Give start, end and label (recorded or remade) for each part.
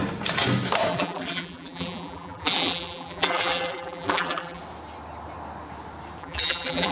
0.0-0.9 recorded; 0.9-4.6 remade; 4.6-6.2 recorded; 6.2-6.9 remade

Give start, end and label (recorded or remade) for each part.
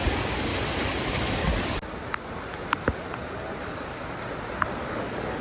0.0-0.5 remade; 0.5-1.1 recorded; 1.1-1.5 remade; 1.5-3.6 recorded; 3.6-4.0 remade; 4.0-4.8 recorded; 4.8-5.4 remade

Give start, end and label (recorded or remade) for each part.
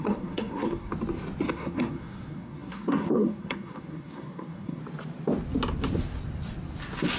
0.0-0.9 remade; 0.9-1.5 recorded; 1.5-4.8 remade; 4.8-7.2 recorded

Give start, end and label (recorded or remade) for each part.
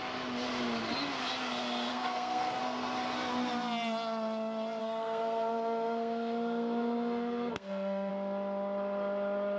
0.0-1.9 recorded; 1.9-2.6 remade; 2.6-4.8 recorded; 4.8-8.1 remade; 8.1-9.6 recorded